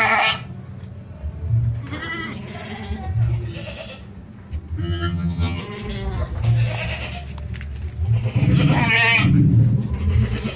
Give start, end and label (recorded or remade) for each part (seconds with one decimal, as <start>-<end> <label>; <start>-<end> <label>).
0.0-4.8 recorded; 4.8-5.6 remade; 5.6-10.6 recorded